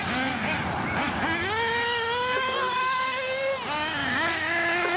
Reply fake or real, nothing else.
real